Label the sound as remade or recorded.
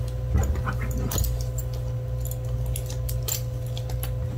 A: recorded